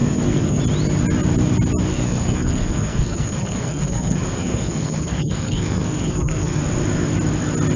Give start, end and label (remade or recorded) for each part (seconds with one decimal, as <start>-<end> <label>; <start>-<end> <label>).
0.0-0.6 remade; 0.6-1.9 recorded; 1.9-6.6 remade; 6.6-7.8 recorded